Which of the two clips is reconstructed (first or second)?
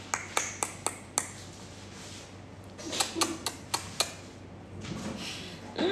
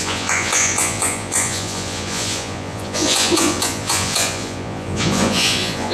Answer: second